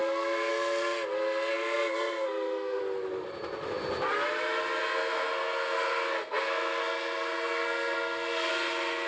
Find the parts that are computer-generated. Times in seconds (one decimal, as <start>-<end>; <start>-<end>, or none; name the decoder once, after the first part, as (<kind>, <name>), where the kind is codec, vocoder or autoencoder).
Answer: 0.0-0.5 (codec, SNAC); 1.5-2.8; 4.8-8.5